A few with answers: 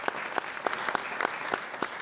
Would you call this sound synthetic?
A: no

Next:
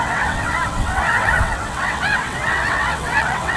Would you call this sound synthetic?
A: yes